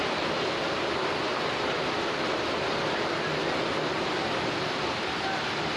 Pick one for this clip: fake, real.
real